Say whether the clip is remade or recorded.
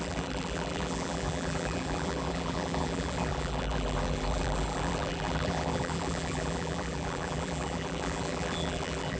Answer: remade